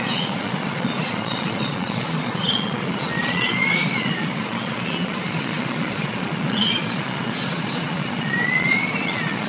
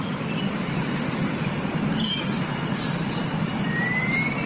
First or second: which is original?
second